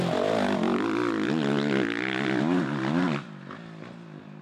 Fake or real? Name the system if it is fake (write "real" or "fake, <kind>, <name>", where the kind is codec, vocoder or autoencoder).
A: real